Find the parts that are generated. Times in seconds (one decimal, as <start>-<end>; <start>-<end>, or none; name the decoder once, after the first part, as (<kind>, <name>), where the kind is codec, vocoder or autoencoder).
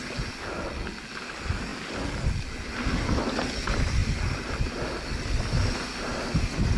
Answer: 4.0-4.5 (vocoder, BigVGAN v2)